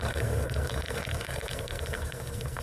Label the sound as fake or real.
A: fake